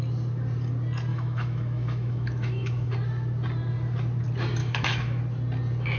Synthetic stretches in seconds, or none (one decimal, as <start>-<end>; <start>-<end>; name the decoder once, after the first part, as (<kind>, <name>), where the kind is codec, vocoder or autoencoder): 1.1-2.9 (autoencoder, DAC-VAE); 4.6-5.2